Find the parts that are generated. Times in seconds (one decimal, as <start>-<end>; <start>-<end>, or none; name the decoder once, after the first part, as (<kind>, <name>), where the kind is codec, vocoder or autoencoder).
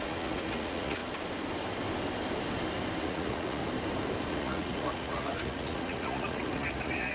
0.0-1.0 (vocoder, Vocos); 3.0-3.6; 4.3-7.1